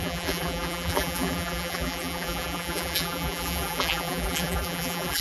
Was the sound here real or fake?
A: fake